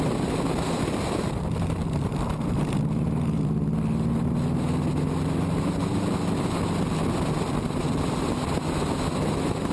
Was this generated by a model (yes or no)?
no